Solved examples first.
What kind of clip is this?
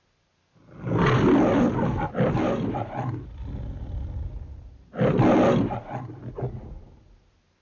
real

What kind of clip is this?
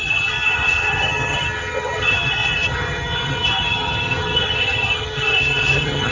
fake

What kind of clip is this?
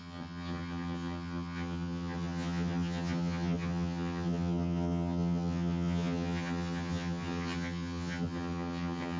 fake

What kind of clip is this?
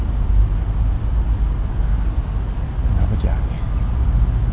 real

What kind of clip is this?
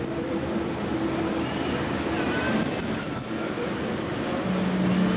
real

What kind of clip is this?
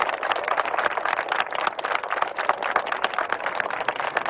real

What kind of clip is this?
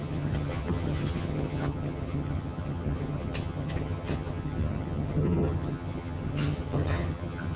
fake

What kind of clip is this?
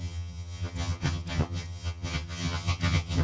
fake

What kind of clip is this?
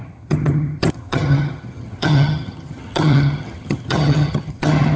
fake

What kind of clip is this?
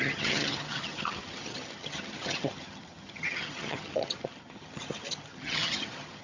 fake